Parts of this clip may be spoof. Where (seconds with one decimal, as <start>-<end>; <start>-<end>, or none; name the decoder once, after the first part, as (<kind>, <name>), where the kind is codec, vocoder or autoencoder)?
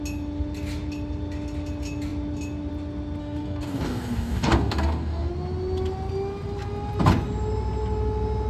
3.2-5.3 (codec, DAC)